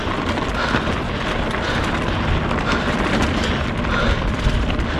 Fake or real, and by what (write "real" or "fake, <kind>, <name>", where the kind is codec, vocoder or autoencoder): real